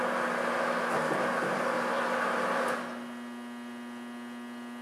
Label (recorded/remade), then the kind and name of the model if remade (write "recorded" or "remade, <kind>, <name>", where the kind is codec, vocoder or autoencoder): recorded